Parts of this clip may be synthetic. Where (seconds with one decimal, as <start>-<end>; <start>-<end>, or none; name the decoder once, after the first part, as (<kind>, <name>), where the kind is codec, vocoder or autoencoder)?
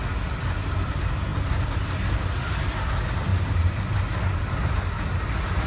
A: none